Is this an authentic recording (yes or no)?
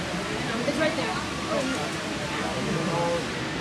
yes